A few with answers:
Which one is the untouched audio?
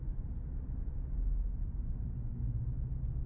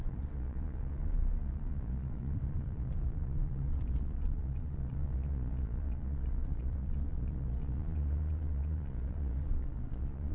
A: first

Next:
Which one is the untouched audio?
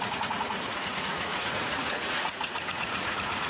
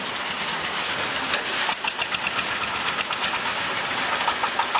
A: second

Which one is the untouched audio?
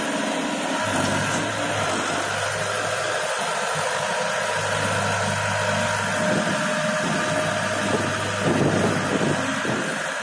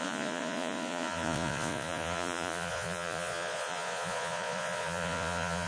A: first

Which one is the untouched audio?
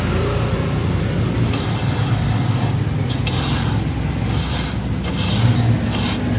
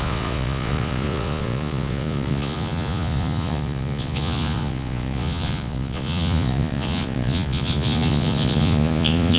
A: first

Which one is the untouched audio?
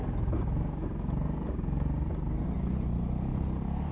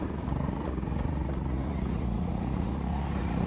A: first